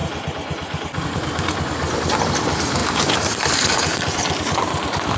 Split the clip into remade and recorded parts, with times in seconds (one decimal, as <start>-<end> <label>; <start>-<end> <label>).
0.0-5.2 recorded